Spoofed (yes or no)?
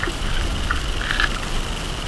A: no